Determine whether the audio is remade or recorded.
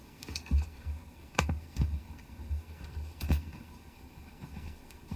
remade